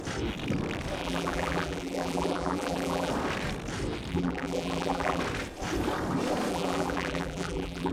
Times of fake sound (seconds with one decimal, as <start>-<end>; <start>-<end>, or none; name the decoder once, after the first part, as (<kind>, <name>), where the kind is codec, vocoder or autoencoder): 1.0-3.1 (vocoder, BigVGAN v2); 4.1-5.2; 6.5-7.9